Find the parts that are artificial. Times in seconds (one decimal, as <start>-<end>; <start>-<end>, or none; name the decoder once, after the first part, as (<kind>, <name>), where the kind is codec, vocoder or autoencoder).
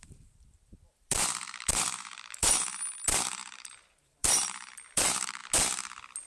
0.0-5.4 (vocoder, BigVGAN v2)